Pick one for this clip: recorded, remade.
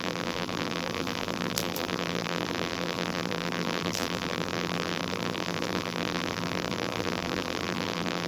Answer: remade